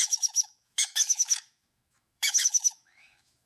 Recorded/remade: remade